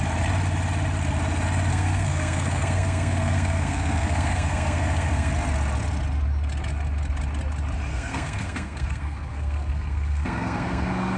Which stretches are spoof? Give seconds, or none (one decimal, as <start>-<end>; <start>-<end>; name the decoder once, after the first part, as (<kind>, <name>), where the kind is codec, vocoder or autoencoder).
1.7-5.3 (codec, SNAC); 7.9-11.2